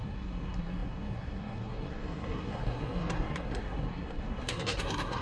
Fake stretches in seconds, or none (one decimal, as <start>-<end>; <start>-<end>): 0.0-5.2